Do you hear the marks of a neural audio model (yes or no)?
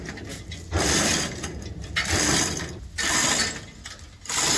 no